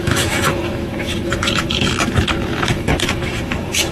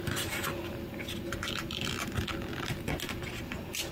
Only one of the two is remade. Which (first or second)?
first